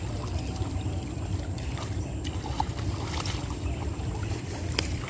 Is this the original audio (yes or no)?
no